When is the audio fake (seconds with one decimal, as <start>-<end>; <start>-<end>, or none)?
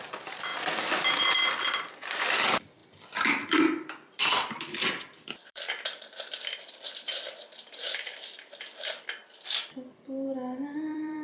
0.0-9.2; 9.9-11.2